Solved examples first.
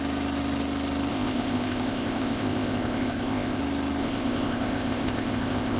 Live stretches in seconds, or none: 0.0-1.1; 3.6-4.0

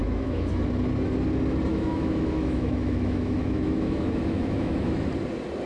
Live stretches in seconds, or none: 0.5-1.7; 5.1-5.7

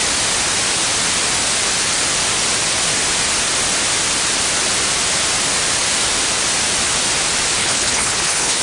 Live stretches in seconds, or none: 0.0-7.6

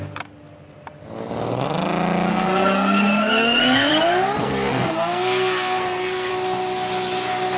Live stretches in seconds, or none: 0.0-2.3; 3.9-4.4; 6.3-7.6

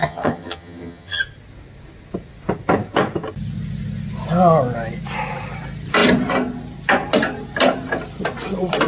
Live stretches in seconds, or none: 1.2-8.9

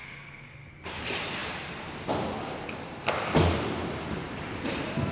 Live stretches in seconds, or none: 0.7-5.1

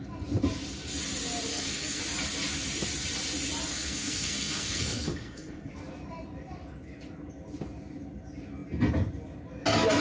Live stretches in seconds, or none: 0.0-1.5; 2.0-3.7; 5.7-10.0